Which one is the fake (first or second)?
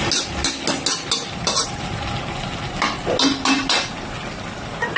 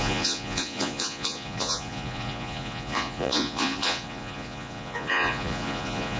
second